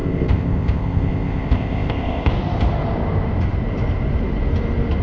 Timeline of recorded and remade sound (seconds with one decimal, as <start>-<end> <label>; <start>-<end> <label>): 0.0-2.3 remade; 2.3-5.0 recorded